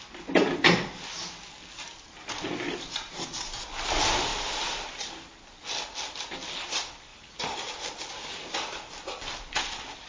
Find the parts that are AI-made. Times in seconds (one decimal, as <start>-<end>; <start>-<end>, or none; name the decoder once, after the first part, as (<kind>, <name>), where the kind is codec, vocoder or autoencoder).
none

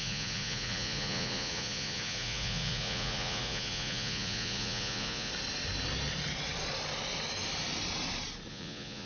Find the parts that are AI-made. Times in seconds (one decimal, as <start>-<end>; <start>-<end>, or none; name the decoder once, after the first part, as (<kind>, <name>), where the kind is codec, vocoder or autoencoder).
0.0-5.3 (vocoder, Vocos); 8.5-9.1

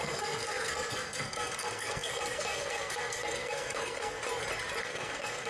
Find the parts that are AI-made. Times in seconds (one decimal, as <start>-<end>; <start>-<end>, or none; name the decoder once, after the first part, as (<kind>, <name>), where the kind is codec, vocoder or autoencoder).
0.0-4.2 (codec, SNAC); 4.8-5.5

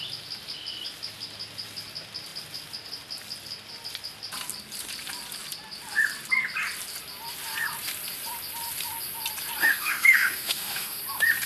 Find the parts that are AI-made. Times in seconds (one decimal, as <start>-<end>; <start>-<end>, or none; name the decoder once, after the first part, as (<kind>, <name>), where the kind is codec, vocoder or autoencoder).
9.6-11.0 (autoencoder, DAC-VAE)